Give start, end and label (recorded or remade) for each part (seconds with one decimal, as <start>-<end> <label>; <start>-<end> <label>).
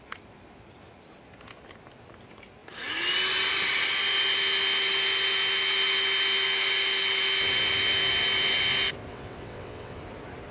0.0-9.1 recorded; 9.1-10.0 remade; 10.0-10.5 recorded